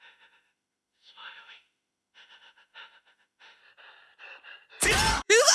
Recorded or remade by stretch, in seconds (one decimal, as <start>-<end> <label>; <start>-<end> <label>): 0.0-3.6 remade; 3.6-5.1 recorded; 5.1-5.5 remade